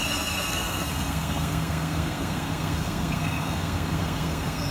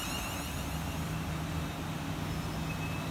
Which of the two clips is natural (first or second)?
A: second